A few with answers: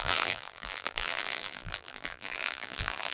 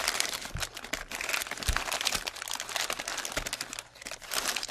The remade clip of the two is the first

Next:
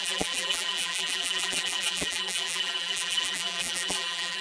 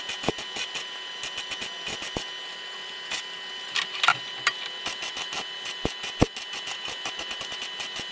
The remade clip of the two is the first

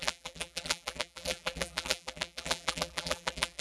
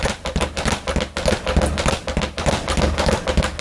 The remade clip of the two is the first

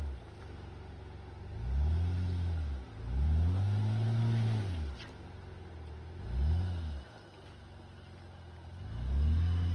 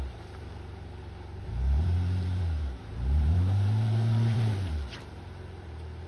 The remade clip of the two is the second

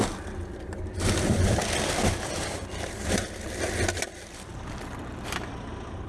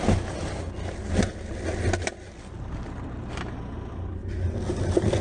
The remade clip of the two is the first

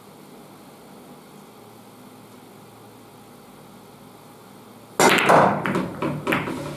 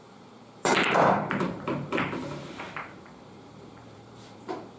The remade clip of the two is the second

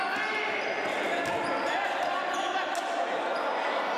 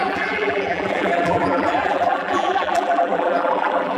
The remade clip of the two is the second